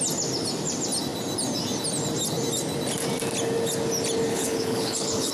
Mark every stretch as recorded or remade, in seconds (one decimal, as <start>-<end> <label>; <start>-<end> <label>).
0.0-4.3 recorded; 4.3-5.3 remade

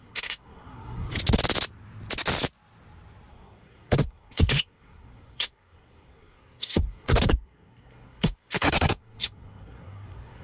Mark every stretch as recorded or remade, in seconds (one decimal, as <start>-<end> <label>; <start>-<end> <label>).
0.0-1.1 remade; 1.1-3.3 recorded; 3.3-10.4 remade

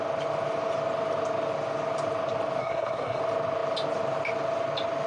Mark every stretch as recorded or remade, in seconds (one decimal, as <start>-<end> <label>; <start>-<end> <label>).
0.0-2.6 recorded; 2.6-3.2 remade; 3.2-5.1 recorded

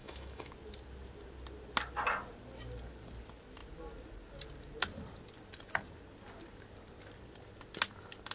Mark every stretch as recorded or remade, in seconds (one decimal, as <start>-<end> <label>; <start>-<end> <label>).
0.0-0.5 remade; 0.5-8.3 recorded

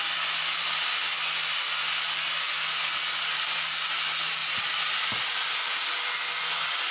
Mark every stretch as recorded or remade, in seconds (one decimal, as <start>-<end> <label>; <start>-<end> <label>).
0.0-4.4 recorded; 4.4-6.5 remade; 6.5-6.9 recorded

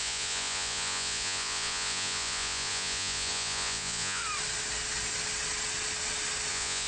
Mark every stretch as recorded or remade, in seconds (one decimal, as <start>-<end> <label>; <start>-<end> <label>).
0.0-4.2 remade; 4.2-6.5 recorded; 6.5-6.9 remade

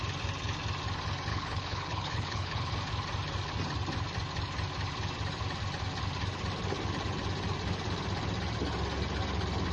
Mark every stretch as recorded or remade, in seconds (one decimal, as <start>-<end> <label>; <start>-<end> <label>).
0.0-1.3 recorded; 1.3-2.7 remade; 2.7-9.7 recorded

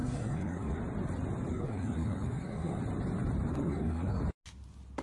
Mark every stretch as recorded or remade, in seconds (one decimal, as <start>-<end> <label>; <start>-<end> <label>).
0.0-0.8 remade; 0.8-1.5 recorded; 1.5-2.8 remade; 2.8-3.5 recorded; 3.5-4.2 remade; 4.2-5.0 recorded